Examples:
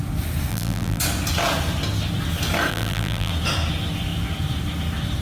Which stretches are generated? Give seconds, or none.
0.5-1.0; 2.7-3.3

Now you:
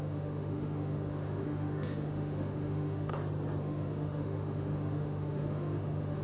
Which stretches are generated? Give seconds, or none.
0.0-3.1; 3.6-6.2

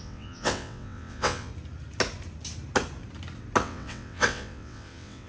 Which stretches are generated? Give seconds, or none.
0.0-1.5; 3.6-5.3

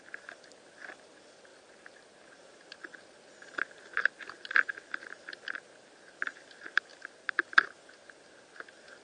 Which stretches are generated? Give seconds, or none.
none

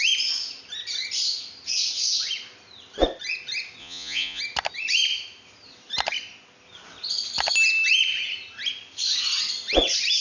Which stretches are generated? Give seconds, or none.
3.8-4.4

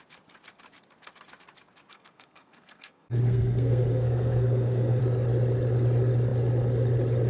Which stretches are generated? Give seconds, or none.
1.9-5.0

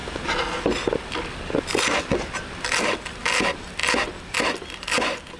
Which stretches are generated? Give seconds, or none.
none

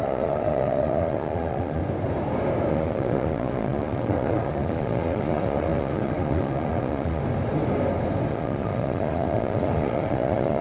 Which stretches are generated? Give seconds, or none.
0.0-1.8; 2.7-7.2; 8.3-10.6